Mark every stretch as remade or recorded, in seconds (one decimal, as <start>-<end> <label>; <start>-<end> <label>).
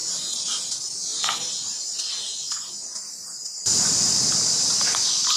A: 0.0-5.4 recorded